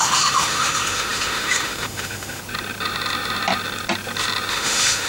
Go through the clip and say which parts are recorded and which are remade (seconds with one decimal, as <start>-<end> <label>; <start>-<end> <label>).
0.0-2.4 remade; 2.4-4.5 recorded; 4.5-5.1 remade